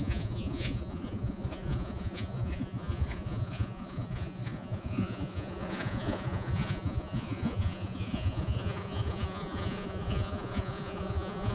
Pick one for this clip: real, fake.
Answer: fake